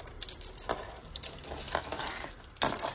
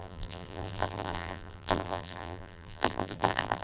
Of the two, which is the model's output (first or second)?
second